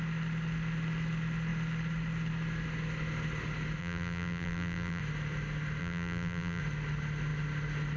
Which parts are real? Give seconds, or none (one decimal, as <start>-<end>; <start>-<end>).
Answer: 0.0-3.8; 5.0-5.8; 6.6-8.0